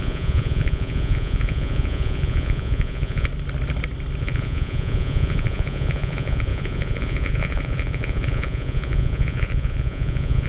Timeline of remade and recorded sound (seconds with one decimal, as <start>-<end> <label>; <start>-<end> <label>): 0.0-3.3 remade; 3.3-4.2 recorded; 4.2-10.5 remade